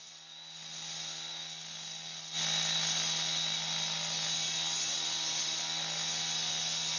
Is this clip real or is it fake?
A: real